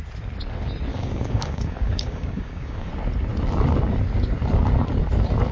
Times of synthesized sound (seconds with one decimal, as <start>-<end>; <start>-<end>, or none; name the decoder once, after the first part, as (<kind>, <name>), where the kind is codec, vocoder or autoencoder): 0.9-2.9 (codec, DAC)